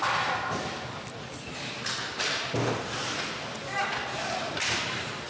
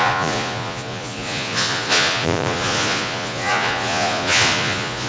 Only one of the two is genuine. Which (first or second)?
first